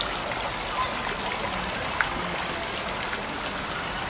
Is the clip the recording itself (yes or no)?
yes